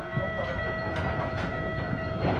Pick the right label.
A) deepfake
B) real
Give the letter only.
A